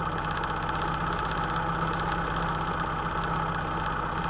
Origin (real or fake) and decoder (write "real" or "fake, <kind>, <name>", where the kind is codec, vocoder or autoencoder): real